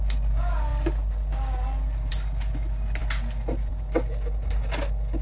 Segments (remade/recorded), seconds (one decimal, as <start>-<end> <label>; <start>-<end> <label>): 0.0-5.2 recorded